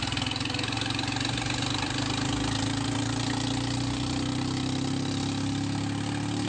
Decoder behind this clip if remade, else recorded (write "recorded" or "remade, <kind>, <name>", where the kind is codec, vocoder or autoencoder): recorded